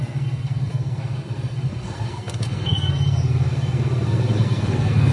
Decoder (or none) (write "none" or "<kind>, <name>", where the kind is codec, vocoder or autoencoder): codec, SNAC